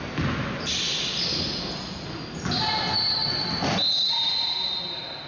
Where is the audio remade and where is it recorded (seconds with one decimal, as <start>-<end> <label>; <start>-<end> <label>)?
0.0-5.3 recorded